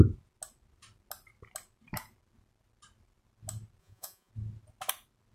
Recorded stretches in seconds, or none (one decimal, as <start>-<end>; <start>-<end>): 0.0-3.8; 4.3-5.3